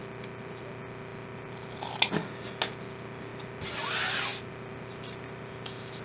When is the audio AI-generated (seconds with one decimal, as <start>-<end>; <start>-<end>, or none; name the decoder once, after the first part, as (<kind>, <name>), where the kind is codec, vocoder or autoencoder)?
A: none